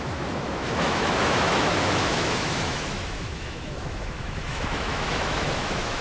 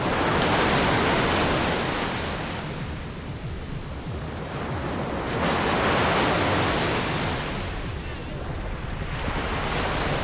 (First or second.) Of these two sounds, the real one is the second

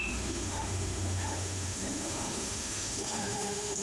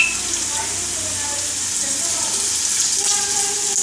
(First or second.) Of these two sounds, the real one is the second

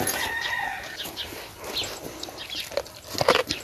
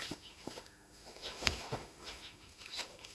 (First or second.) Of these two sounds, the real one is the first